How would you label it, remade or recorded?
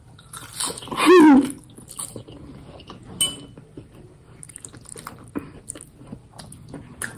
recorded